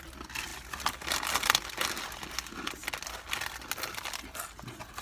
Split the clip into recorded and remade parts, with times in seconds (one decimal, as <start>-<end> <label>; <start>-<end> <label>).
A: 0.0-5.0 recorded

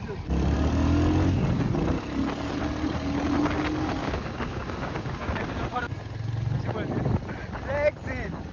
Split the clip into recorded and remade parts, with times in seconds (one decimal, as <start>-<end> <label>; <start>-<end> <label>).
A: 0.0-4.0 recorded; 4.0-5.9 remade; 5.9-8.5 recorded

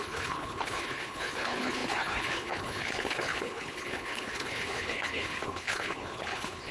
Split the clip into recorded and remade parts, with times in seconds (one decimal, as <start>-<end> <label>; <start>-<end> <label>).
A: 0.0-6.7 remade

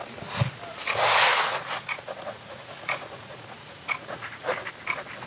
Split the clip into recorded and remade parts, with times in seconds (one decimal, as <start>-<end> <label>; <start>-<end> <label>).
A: 0.0-1.3 recorded; 1.3-4.5 remade; 4.5-5.3 recorded

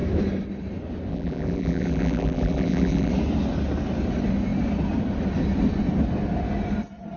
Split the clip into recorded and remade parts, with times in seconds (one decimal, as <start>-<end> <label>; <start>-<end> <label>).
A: 0.0-1.1 recorded; 1.1-3.1 remade; 3.1-7.2 recorded